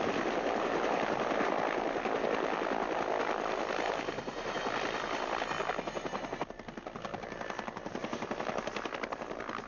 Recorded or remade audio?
recorded